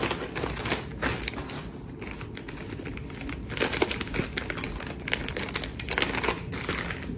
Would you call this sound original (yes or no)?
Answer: yes